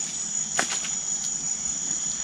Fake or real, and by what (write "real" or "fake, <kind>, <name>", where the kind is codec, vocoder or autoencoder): real